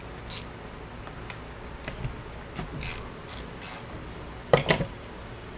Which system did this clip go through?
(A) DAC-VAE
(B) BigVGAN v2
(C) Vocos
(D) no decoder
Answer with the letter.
D